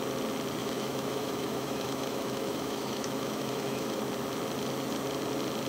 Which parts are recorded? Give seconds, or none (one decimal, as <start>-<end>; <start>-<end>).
0.0-0.6; 4.0-5.7

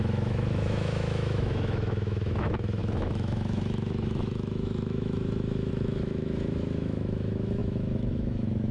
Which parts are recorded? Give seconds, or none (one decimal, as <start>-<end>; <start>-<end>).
none

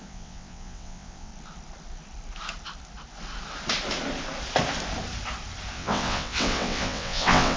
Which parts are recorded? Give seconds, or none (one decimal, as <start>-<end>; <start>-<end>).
1.3-5.7

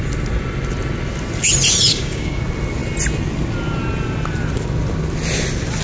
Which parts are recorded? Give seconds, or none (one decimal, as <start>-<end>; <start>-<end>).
0.0-1.9; 2.4-5.8

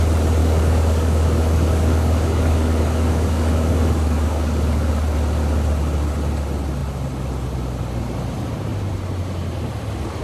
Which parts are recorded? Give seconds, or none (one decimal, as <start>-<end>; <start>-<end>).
0.0-0.4; 4.9-10.2

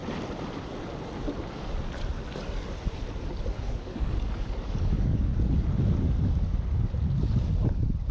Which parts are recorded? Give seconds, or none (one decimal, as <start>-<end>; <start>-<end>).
0.0-3.6; 5.3-8.1

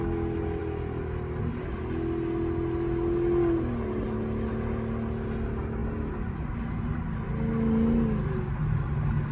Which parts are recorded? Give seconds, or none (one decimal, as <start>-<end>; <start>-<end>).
0.0-9.3